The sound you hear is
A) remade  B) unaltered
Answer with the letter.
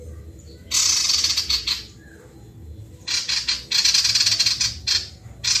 B